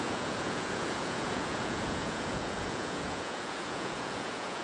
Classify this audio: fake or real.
fake